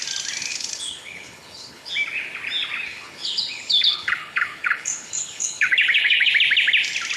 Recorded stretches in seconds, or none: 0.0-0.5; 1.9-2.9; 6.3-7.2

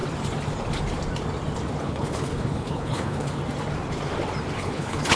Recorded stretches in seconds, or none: 0.0-1.8; 3.4-4.6

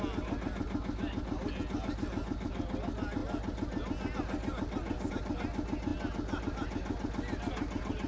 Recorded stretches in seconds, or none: 0.0-8.1